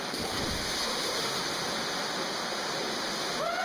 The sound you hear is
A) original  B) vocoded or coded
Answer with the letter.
A